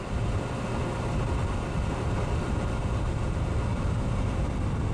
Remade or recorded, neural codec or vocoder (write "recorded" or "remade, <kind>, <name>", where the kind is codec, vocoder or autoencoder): recorded